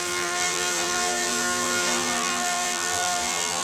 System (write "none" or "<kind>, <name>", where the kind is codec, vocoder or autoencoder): vocoder, BigVGAN v2